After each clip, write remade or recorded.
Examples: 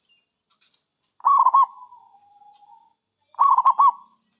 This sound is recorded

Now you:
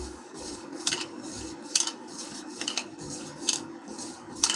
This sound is remade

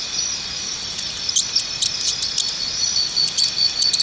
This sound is recorded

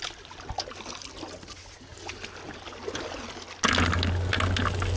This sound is recorded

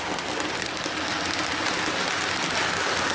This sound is recorded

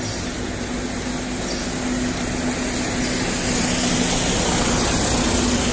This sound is recorded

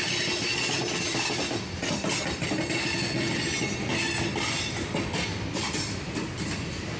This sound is recorded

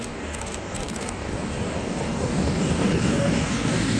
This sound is remade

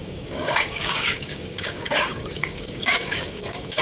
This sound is remade